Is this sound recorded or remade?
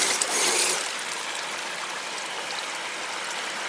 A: recorded